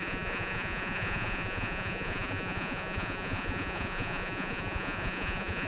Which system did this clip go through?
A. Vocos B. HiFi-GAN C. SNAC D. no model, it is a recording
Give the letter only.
A